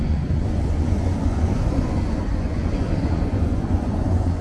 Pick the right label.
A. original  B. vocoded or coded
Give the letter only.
B